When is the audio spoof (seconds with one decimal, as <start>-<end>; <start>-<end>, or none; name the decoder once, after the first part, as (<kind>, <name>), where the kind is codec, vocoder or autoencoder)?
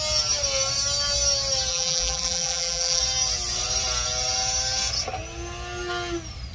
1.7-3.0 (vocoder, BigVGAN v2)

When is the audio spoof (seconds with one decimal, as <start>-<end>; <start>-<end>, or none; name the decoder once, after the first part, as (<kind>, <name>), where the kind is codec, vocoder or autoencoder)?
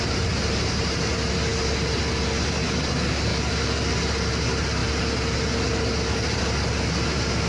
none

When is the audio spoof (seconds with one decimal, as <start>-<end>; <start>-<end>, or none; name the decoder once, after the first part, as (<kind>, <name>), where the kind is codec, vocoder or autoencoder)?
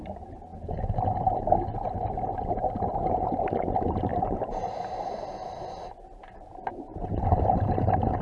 none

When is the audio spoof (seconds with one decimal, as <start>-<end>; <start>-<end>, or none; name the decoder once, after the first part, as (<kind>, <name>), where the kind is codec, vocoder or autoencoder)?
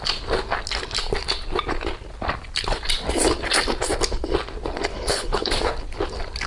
4.9-5.5 (codec, HILCodec)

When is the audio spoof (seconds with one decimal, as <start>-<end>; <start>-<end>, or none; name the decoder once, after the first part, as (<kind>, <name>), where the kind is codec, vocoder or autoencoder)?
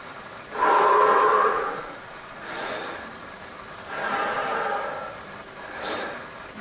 1.5-2.7 (vocoder, Vocos)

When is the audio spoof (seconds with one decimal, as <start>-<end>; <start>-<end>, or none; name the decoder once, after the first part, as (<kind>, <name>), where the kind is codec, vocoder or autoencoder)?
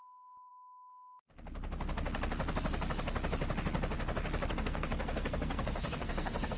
0.0-0.5 (codec, SNAC); 4.5-6.6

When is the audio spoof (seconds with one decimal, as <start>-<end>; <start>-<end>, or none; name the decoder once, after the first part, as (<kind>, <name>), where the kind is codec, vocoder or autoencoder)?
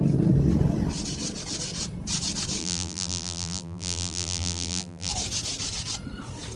2.6-5.1 (vocoder, BigVGAN v2)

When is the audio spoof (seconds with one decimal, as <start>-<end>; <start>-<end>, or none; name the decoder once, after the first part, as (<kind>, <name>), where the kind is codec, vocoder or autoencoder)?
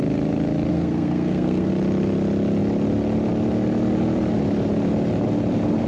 0.7-1.7 (codec, SNAC)